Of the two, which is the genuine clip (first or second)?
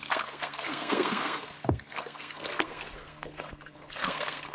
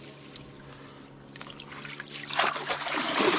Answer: second